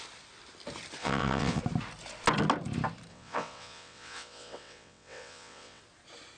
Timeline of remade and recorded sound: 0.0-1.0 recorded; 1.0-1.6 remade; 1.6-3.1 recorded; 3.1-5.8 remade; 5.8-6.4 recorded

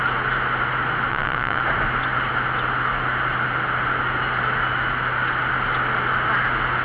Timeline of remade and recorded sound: 0.0-1.1 recorded; 1.1-1.6 remade; 1.6-6.8 recorded

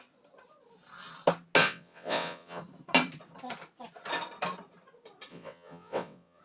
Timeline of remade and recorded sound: 0.0-1.6 recorded; 1.6-2.6 remade; 2.6-5.3 recorded; 5.3-6.4 remade

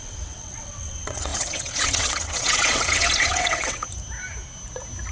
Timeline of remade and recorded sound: 0.0-3.8 remade; 3.8-5.1 recorded

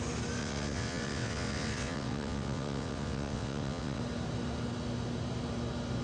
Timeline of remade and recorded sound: 0.0-0.4 recorded; 0.4-4.0 remade; 4.0-6.0 recorded